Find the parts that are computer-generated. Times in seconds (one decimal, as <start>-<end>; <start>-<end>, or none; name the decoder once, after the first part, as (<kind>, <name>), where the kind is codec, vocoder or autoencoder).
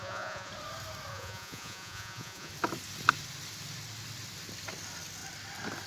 0.0-0.5 (vocoder, Vocos); 1.1-2.5